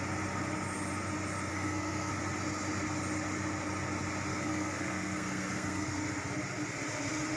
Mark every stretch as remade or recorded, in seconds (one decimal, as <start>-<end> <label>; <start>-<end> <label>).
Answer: 0.0-1.5 recorded; 1.5-2.1 remade; 2.1-4.3 recorded; 4.3-6.0 remade; 6.0-7.4 recorded